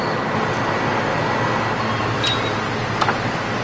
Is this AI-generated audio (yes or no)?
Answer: no